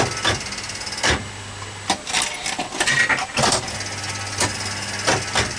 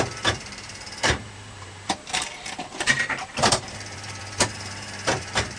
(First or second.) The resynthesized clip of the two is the second